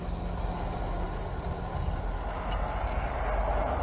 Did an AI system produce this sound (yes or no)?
no